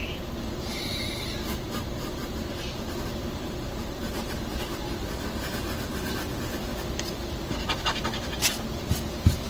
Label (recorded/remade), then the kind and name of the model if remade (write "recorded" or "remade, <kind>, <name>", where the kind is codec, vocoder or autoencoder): recorded